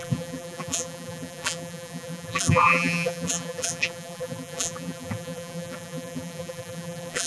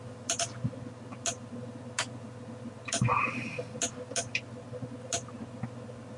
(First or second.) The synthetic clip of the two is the first